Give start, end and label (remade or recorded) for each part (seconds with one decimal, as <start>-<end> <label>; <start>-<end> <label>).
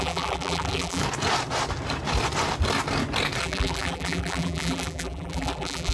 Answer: 0.0-1.0 remade; 1.0-3.4 recorded; 3.4-5.9 remade